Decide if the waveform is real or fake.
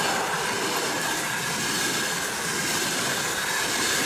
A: real